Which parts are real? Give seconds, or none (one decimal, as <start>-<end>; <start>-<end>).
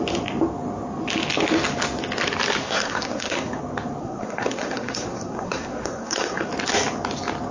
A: 0.0-2.6; 3.6-4.0; 6.5-7.5